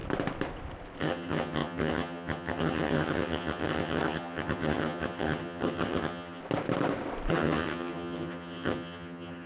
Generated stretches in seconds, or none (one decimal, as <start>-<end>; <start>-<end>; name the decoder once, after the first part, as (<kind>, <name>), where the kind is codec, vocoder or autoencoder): 1.0-6.4 (vocoder, HiFi-GAN); 7.3-9.5